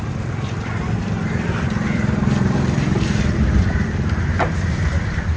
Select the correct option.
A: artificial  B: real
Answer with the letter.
A